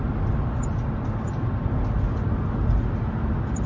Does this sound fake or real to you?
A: real